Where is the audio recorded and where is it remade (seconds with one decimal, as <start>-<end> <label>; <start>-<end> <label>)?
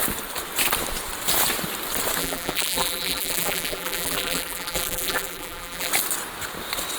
0.0-2.2 recorded; 2.2-5.9 remade; 5.9-7.0 recorded